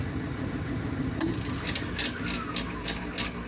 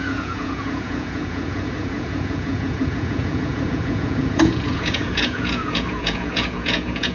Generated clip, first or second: second